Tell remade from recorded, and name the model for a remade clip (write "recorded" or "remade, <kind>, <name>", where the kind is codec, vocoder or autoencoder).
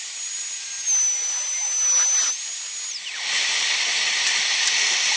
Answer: recorded